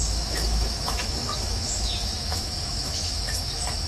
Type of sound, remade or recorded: remade